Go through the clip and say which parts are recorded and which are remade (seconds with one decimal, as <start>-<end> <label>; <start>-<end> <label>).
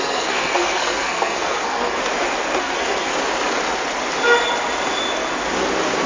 0.0-2.0 remade; 2.0-2.6 recorded; 2.6-3.1 remade; 3.1-6.1 recorded